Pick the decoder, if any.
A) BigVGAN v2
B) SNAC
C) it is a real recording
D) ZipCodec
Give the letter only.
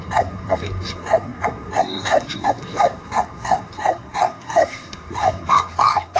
B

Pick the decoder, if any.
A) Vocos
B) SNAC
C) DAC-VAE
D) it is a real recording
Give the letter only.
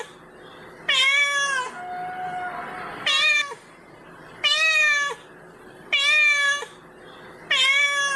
D